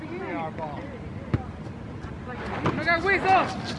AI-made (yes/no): no